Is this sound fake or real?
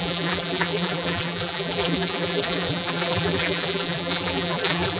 fake